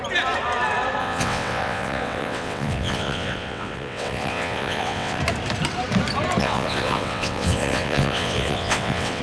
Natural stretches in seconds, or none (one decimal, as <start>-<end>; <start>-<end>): 0.0-1.0; 5.2-6.4